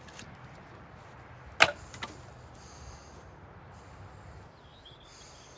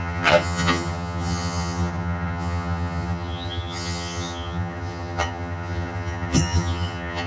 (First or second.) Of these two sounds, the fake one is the second